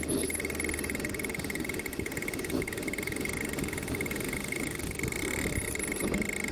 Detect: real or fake real